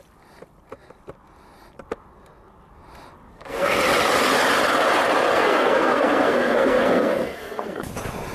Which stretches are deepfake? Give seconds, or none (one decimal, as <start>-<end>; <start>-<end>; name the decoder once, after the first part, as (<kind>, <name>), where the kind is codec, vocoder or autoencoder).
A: 3.3-3.8 (codec, SNAC); 5.3-7.9